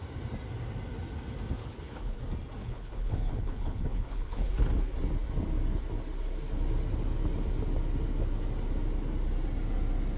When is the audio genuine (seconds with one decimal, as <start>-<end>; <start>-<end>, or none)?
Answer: 0.0-1.6; 2.2-2.6; 4.5-10.2